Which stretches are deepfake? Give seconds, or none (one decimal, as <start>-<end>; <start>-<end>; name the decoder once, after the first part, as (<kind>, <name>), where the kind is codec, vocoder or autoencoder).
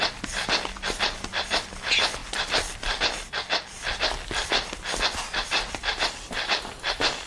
5.3-7.3 (vocoder, BigVGAN v2)